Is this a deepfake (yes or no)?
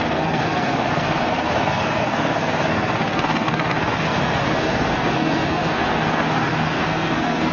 yes